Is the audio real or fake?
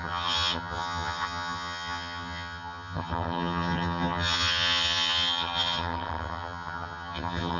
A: fake